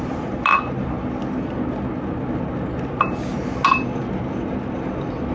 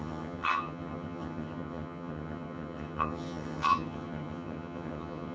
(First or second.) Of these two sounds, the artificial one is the second